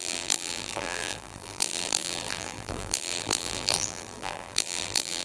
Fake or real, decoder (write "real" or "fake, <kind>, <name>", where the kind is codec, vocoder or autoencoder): fake, vocoder, BigVGAN v2